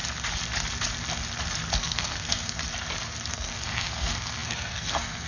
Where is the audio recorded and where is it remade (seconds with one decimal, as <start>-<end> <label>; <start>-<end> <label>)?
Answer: 0.0-1.8 recorded; 1.8-2.6 remade; 2.6-3.3 recorded; 3.3-5.3 remade